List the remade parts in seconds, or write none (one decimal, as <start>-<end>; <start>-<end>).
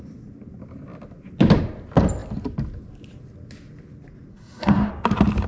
4.3-4.9